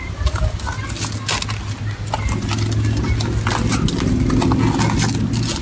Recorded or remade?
recorded